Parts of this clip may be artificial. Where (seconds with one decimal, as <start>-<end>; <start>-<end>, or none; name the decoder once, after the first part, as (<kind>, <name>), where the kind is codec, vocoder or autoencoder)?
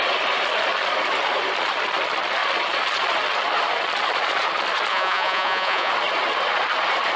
4.9-5.9 (vocoder, Vocos)